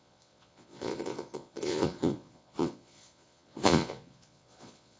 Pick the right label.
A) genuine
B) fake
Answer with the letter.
B